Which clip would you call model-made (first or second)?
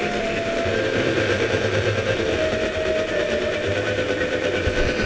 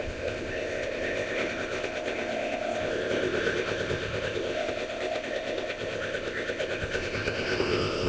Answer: second